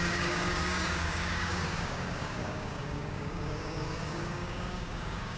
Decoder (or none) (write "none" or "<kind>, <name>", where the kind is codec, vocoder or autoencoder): codec, DAC